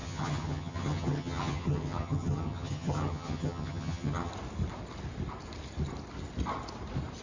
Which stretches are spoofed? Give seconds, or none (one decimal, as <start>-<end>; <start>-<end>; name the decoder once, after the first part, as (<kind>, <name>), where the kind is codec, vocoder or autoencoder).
0.0-4.3 (vocoder, HiFi-GAN)